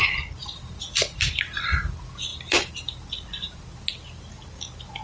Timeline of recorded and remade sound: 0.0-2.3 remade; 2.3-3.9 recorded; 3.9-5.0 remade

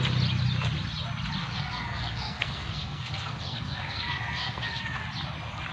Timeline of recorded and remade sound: 0.0-1.4 recorded; 1.4-4.8 remade; 4.8-5.7 recorded